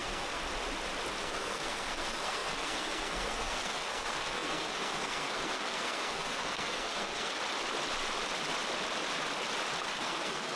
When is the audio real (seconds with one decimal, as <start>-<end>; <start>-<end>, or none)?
0.4-1.2; 7.4-9.9